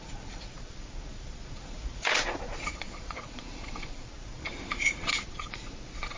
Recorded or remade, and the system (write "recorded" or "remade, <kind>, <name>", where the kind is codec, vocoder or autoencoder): remade, vocoder, Vocos